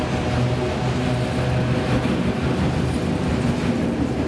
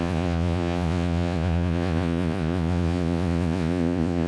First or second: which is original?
first